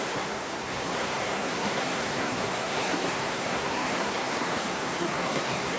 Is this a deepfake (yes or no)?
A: yes